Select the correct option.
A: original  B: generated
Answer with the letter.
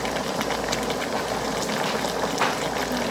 A